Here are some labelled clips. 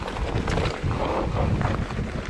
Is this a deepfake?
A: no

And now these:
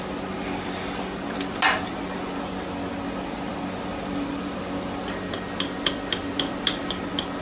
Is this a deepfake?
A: no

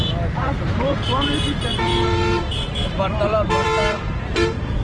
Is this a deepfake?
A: yes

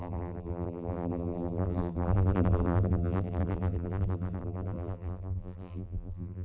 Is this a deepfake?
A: yes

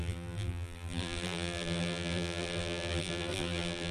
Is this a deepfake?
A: yes